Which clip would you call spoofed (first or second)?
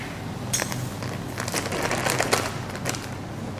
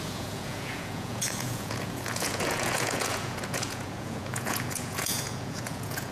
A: second